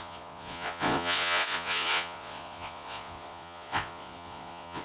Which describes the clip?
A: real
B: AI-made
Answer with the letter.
B